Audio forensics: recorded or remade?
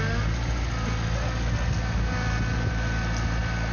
recorded